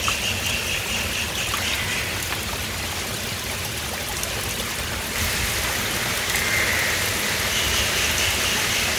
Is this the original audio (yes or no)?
yes